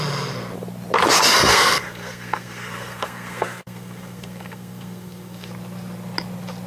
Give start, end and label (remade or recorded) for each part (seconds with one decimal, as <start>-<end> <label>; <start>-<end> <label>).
0.0-1.5 recorded; 1.5-5.5 remade; 5.5-6.7 recorded